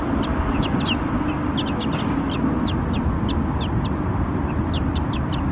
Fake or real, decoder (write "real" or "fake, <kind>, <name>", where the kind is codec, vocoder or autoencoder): real